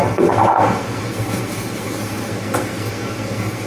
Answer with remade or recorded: remade